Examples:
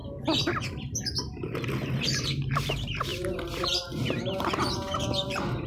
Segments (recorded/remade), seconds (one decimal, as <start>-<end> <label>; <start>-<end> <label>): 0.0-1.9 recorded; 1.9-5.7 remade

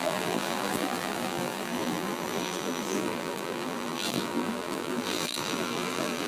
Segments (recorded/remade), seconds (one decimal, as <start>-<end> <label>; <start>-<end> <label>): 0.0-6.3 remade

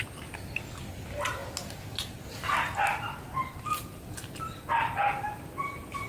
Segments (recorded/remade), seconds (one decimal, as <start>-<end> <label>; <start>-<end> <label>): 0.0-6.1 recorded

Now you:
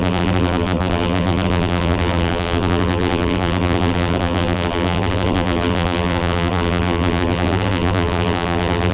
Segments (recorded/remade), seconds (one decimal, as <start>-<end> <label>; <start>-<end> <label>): 0.0-8.9 remade

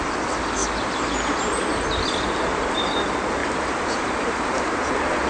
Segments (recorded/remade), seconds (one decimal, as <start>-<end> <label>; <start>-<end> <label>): 0.0-3.4 recorded; 3.4-5.3 remade